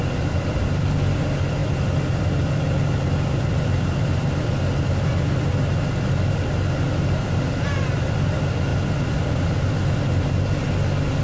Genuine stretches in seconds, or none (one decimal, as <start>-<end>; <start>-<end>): 0.0-11.2